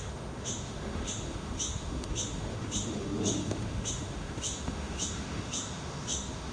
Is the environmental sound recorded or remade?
remade